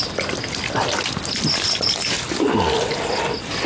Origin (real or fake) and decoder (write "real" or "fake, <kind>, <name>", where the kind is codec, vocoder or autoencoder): real